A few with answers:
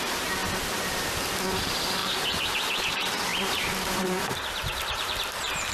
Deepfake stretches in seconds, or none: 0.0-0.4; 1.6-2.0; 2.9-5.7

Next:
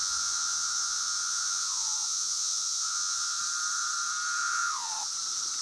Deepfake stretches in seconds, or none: 0.0-3.4; 4.4-4.9

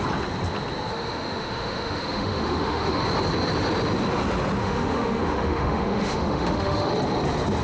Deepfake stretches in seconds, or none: 0.9-3.0; 4.6-6.9

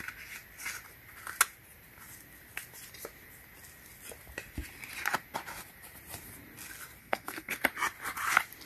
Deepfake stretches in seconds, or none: 7.0-7.6

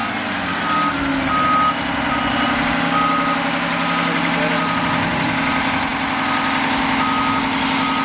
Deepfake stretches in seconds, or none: none

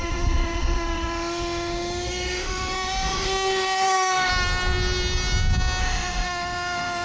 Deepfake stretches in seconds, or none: 0.0-4.3; 5.8-7.0

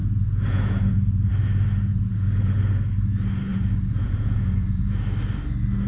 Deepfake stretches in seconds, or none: 0.0-1.3; 1.9-2.6; 3.5-4.8

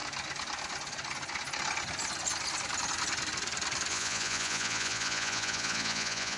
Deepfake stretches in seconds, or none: 3.9-6.4